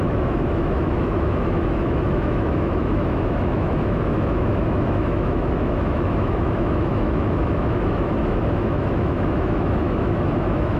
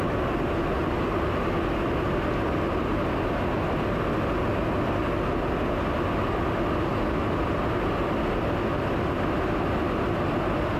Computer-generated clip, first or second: first